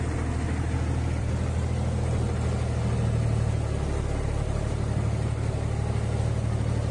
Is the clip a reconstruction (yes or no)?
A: no